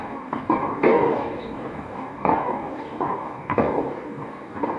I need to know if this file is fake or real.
fake